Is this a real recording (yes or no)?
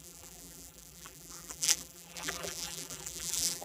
no